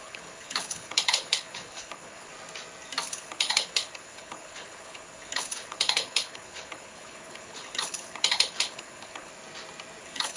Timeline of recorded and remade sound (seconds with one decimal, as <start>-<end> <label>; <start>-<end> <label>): 0.0-2.3 remade; 2.3-3.1 recorded; 3.1-9.3 remade; 9.3-10.0 recorded; 10.0-10.4 remade